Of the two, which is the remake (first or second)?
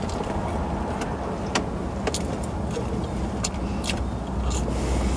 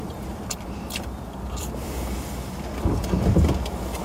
second